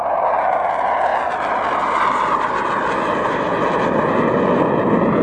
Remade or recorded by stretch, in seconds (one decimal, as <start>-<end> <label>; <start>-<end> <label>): 0.0-5.2 recorded